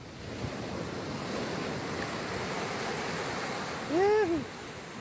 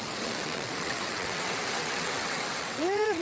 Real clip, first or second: first